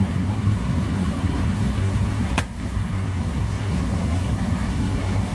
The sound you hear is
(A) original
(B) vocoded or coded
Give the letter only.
B